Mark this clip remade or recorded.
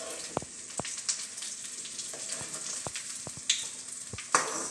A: recorded